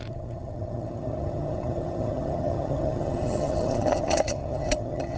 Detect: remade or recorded remade